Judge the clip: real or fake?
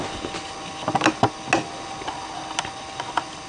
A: real